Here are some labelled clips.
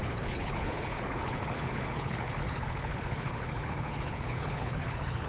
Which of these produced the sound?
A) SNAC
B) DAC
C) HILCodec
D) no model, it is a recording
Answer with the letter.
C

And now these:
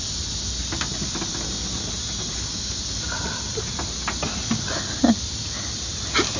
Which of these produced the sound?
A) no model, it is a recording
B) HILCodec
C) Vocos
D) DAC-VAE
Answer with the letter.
A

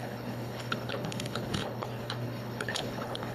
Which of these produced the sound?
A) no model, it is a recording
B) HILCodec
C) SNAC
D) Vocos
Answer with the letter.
B